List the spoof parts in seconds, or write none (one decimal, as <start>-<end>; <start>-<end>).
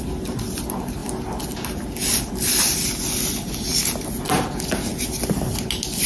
none